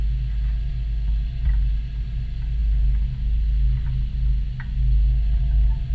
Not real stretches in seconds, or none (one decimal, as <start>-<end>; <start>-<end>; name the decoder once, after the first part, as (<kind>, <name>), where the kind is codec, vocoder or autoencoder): none